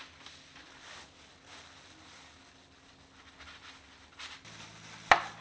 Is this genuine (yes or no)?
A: yes